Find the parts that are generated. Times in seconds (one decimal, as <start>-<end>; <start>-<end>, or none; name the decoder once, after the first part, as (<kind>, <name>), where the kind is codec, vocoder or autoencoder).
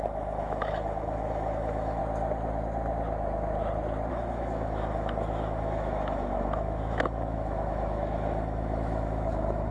0.0-2.0 (autoencoder, DAC-VAE); 4.1-9.7